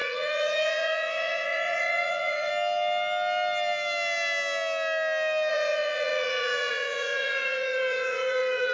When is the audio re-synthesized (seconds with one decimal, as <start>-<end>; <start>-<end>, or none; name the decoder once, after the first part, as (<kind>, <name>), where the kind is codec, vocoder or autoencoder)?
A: 0.0-2.5 (vocoder, Vocos); 5.5-8.7